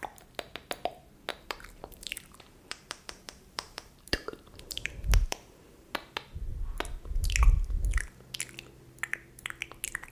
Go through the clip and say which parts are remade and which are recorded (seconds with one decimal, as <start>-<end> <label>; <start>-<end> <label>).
0.0-1.3 recorded; 1.3-5.9 remade; 5.9-10.1 recorded